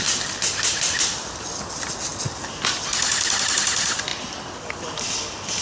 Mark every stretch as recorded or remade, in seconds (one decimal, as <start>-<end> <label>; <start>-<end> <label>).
0.0-5.6 recorded